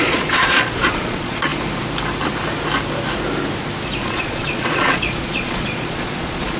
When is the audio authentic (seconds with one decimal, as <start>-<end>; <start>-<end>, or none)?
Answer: 1.5-4.0